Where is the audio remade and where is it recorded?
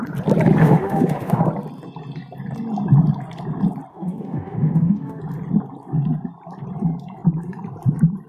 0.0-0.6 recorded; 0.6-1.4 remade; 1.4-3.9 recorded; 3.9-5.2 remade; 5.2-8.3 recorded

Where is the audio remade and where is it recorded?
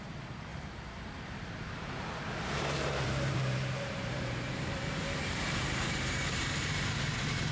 0.0-0.5 remade; 0.5-2.6 recorded; 2.6-7.5 remade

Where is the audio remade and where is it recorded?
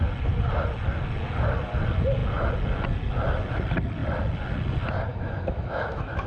0.0-5.1 recorded; 5.1-6.3 remade